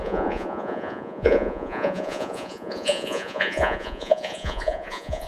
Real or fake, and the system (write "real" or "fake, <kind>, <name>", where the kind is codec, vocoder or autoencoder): fake, vocoder, Vocos